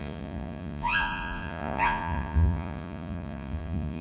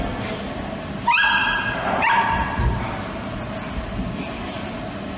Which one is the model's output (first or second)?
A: first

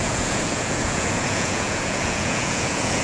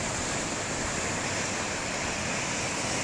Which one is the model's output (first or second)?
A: first